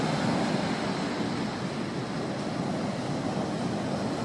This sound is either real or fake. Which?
real